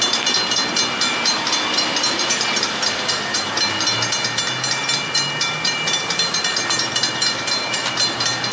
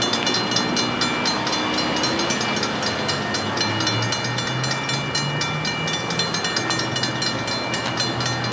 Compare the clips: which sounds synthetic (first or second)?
first